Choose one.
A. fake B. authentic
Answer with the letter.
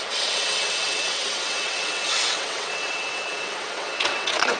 A